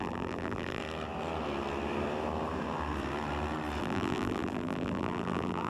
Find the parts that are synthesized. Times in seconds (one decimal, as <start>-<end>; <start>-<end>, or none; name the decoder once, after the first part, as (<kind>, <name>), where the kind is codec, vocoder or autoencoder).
0.0-0.8 (vocoder, BigVGAN v2); 3.8-5.7